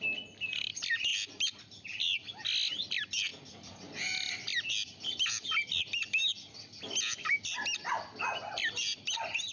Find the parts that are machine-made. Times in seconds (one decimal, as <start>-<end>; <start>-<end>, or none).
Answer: none